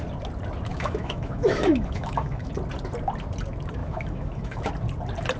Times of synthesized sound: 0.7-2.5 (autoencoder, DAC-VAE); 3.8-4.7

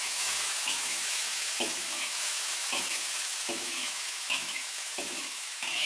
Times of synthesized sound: 0.0-5.9 (autoencoder, DAC-VAE)

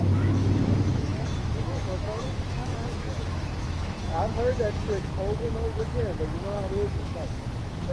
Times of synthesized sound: 0.0-7.9 (autoencoder, DAC-VAE)

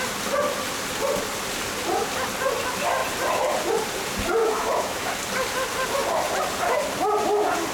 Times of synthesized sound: 4.4-5.1 (autoencoder, DAC-VAE)

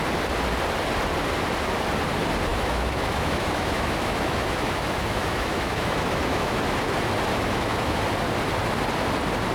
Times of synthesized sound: 2.5-6.6 (autoencoder, DAC-VAE); 7.3-8.0

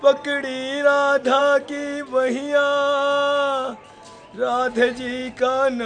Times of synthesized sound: none